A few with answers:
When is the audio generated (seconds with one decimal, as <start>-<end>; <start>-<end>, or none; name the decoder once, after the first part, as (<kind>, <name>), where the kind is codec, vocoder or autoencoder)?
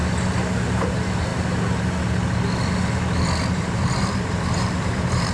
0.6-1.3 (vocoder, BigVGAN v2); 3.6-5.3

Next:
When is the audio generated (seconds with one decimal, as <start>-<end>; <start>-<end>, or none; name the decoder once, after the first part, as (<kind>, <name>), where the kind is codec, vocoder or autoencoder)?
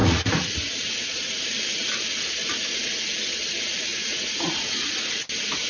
0.0-1.4 (vocoder, Vocos); 3.9-5.0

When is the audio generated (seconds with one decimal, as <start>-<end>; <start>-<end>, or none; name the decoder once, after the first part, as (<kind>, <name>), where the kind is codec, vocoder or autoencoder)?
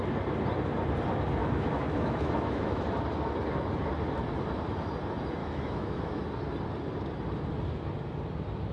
1.4-2.8 (autoencoder, DAC-VAE); 5.4-6.2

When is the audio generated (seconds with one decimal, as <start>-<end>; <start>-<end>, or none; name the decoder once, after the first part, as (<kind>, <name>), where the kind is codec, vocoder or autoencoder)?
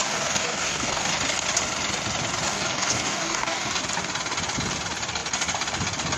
0.0-1.1 (codec, DAC); 2.5-3.8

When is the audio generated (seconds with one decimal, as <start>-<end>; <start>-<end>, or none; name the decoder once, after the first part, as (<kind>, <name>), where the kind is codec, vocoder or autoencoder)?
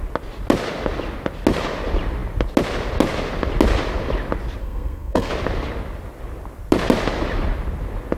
4.6-5.3 (codec, SNAC)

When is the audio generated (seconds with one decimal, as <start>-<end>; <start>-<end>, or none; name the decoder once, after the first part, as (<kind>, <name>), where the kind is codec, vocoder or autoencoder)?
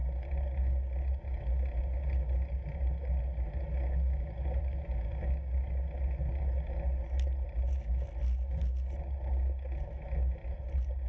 none